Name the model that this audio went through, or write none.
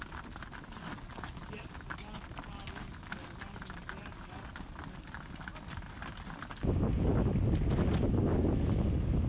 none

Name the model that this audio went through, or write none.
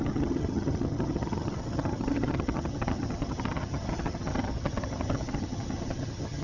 vocoder, HiFi-GAN